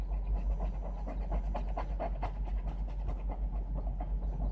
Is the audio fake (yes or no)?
no